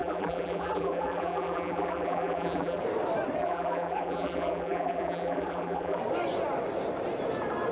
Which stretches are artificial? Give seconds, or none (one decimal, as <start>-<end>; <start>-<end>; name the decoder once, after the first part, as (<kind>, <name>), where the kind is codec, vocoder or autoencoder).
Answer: 0.0-2.8 (vocoder, BigVGAN v2); 3.4-6.0

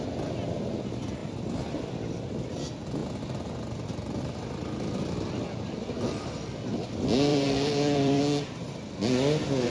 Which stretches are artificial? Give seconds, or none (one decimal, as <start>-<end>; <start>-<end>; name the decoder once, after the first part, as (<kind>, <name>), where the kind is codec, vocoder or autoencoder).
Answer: 1.2-2.3 (vocoder, BigVGAN v2); 7.3-8.2